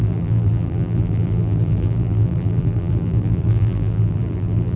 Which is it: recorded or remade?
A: remade